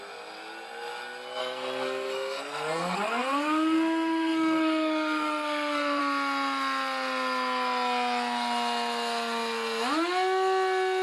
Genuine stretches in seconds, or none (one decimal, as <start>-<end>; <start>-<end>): 0.0-1.4; 6.0-11.0